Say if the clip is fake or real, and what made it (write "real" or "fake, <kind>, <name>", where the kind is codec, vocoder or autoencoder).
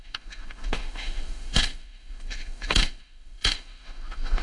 fake, autoencoder, DAC-VAE